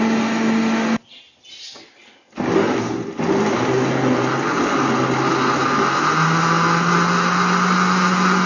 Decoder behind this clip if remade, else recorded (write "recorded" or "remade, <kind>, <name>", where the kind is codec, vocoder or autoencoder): recorded